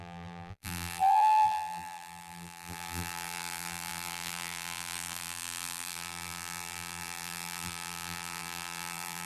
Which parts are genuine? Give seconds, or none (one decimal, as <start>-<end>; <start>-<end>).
none